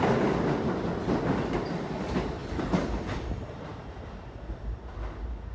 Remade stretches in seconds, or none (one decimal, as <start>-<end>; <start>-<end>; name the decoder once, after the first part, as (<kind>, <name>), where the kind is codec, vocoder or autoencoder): none